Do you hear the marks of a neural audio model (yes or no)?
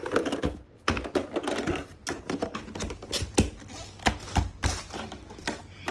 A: no